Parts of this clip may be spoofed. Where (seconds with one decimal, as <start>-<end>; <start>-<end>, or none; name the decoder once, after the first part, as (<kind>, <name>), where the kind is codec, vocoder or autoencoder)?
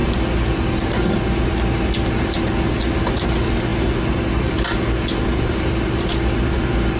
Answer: 2.9-3.7 (vocoder, BigVGAN v2); 4.4-7.0